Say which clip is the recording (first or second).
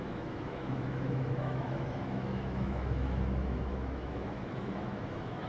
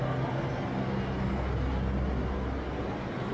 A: second